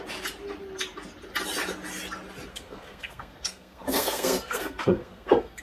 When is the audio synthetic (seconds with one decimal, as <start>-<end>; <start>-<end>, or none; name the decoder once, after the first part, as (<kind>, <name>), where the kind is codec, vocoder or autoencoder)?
2.5-5.6 (codec, SNAC)